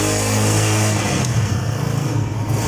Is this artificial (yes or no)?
yes